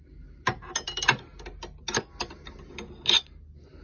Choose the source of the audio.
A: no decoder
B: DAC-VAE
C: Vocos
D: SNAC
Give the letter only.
A